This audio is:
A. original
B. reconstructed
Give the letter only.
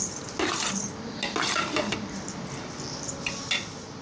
A